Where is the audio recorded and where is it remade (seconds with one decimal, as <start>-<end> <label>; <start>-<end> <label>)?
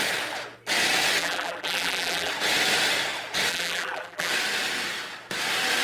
0.0-1.2 recorded; 1.2-2.3 remade; 2.3-3.5 recorded; 3.5-4.3 remade; 4.3-5.8 recorded